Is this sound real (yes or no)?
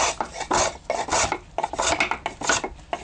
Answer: yes